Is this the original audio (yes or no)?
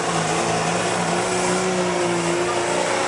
yes